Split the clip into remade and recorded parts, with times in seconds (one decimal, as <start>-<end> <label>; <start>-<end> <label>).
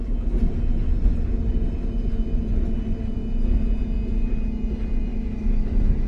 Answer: 0.0-5.1 recorded; 5.1-6.1 remade